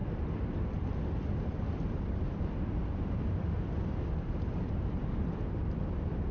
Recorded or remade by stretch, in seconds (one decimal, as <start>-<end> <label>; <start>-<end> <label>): 0.0-6.3 recorded